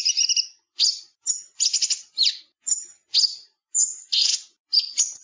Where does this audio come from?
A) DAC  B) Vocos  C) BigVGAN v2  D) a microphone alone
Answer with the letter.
D